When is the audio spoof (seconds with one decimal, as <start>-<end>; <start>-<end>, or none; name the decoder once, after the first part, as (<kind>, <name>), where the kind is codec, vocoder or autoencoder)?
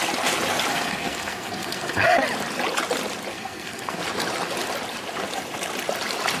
0.7-2.2 (codec, SNAC); 3.3-4.0